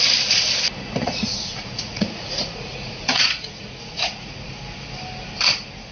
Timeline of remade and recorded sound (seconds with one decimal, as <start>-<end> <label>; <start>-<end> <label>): 0.0-1.0 recorded; 1.0-4.5 remade; 4.5-5.9 recorded